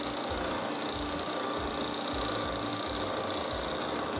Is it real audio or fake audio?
real